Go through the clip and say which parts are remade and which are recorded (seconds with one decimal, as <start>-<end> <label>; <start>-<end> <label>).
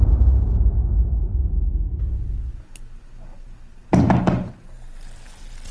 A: 0.0-5.7 recorded